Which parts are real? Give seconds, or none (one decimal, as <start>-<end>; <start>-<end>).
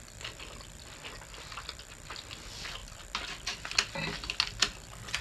0.0-5.2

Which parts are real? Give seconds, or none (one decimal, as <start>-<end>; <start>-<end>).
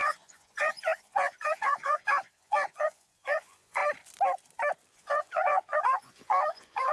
3.8-4.9